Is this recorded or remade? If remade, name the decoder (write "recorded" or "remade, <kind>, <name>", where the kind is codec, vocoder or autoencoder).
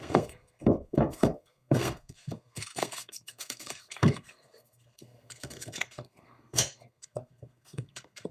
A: remade, codec, SNAC